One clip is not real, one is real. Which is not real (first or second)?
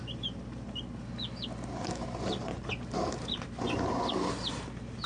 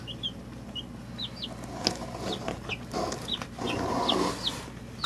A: first